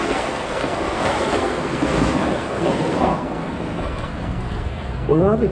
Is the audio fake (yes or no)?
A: yes